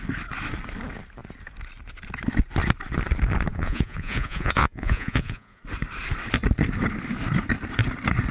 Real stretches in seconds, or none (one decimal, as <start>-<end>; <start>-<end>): 0.0-3.5; 5.6-8.3